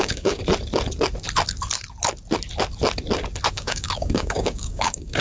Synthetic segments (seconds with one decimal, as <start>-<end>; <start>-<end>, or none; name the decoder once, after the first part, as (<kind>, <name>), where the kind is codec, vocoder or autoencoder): 0.0-0.4 (codec, DAC); 3.5-5.2